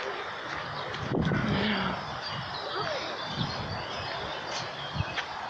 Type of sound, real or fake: real